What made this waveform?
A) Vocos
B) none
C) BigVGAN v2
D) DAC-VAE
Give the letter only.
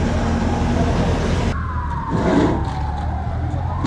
B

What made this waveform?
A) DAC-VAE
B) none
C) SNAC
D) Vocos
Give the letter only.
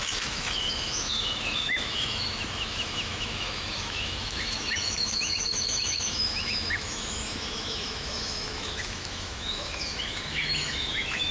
A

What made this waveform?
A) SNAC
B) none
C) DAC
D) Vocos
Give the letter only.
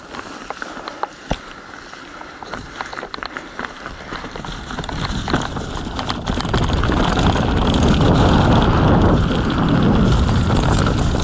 B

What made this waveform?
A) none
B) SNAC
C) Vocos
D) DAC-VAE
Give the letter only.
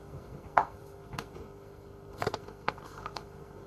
B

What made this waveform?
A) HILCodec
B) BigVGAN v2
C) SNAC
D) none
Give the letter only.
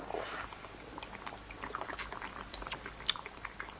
D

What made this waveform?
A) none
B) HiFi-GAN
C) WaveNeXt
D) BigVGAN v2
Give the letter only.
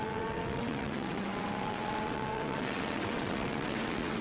C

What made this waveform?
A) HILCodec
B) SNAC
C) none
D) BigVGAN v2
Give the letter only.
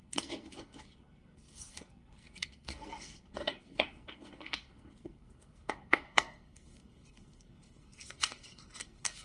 B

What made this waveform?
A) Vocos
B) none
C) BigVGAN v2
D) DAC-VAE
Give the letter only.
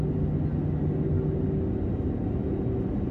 B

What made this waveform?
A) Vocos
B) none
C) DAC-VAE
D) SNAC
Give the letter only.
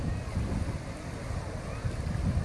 B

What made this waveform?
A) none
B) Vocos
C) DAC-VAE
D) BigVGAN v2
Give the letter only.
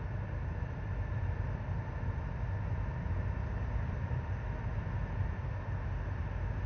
A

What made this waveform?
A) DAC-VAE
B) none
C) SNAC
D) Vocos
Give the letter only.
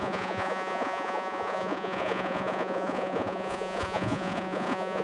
D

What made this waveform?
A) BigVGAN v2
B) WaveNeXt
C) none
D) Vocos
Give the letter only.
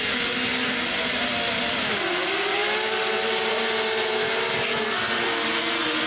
C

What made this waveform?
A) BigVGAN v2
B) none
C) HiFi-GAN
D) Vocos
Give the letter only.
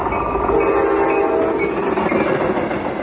B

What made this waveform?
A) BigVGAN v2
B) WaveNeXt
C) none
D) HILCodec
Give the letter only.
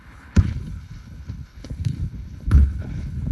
D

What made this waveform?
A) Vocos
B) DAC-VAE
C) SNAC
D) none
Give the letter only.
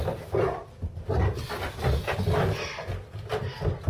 D